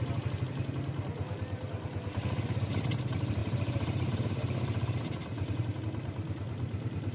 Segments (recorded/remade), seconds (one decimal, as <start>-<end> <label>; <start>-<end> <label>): 0.0-3.4 recorded; 3.4-5.8 remade; 5.8-7.1 recorded